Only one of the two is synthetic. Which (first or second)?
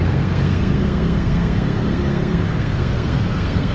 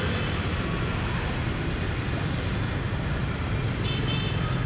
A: first